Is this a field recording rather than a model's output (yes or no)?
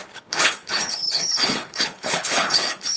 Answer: no